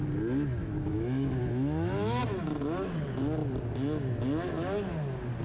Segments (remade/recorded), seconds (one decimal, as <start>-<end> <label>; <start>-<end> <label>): 0.0-0.6 recorded; 0.6-2.2 remade; 2.2-5.4 recorded